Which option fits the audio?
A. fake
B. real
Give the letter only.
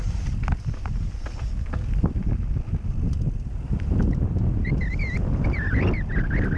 B